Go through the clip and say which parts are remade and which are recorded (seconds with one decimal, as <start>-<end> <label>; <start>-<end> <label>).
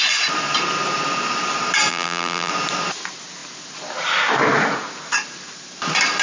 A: 0.0-1.9 recorded; 1.9-2.5 remade; 2.5-6.2 recorded